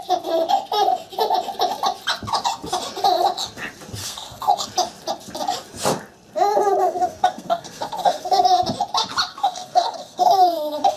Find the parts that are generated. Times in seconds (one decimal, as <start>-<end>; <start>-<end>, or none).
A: 4.0-4.7; 6.8-8.4; 9.3-11.0